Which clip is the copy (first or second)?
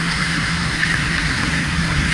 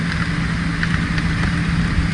first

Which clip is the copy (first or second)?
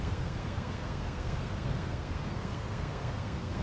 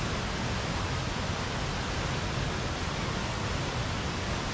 first